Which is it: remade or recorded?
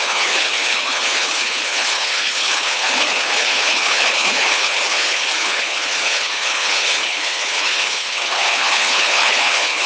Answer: remade